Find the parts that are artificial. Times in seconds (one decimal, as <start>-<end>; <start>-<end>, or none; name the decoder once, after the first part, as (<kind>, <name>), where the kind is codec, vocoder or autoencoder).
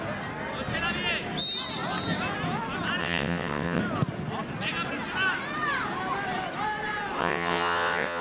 3.0-3.8 (vocoder, WaveNeXt); 7.2-8.2